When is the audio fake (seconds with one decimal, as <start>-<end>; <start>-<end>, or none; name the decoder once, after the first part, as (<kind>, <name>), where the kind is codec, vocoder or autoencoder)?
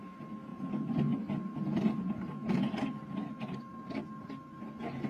none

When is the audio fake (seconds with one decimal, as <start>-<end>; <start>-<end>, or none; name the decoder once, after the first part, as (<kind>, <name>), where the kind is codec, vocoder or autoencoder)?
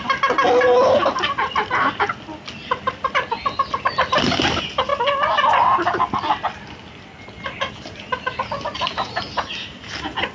none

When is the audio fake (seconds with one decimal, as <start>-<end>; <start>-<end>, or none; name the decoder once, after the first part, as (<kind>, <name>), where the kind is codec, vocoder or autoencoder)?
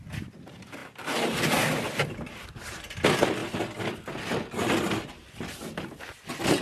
none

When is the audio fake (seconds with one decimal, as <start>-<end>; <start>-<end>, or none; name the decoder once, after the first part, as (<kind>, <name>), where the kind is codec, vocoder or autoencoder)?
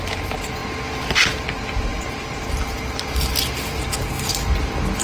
1.9-3.7 (vocoder, BigVGAN v2)